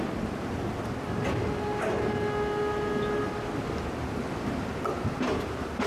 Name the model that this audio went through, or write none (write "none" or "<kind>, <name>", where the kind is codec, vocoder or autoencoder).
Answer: none